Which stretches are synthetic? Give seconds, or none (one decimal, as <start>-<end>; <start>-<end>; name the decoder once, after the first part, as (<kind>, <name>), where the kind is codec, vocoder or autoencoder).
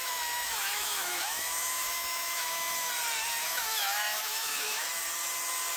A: 0.0-2.9 (autoencoder, DAC-VAE); 3.4-4.9